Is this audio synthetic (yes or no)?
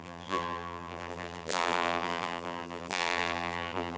yes